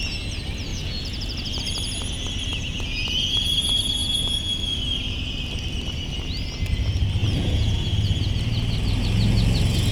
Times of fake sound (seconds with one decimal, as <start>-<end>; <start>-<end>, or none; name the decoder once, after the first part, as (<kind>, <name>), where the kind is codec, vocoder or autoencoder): 0.7-1.6 (vocoder, Vocos); 2.5-3.4; 7.2-8.3

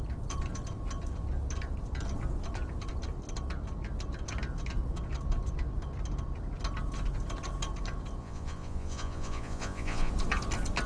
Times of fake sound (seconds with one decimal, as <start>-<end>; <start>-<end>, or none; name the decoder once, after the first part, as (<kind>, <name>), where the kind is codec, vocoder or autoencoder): 8.2-10.1 (vocoder, Vocos)

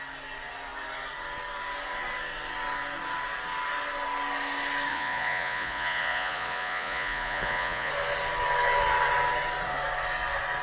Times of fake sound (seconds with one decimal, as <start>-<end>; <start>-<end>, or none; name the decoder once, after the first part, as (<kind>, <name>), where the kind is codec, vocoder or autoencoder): 4.9-7.9 (vocoder, Vocos)

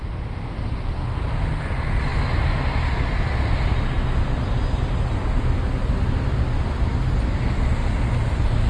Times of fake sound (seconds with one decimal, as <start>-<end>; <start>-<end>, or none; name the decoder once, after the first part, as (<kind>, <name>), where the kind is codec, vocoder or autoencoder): none

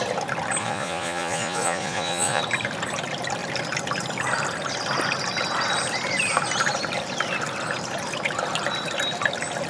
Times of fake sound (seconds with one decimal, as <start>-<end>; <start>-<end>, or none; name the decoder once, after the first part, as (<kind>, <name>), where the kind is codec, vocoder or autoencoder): 0.6-2.4 (vocoder, Vocos)

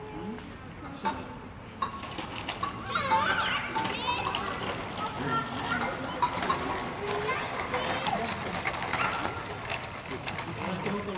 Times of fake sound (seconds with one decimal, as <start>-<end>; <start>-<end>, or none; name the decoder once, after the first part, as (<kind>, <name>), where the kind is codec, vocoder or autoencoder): none